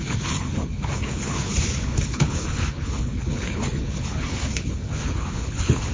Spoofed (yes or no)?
yes